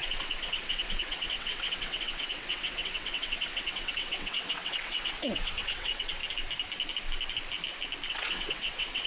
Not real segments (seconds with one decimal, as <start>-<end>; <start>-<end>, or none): 0.0-6.2; 8.1-9.1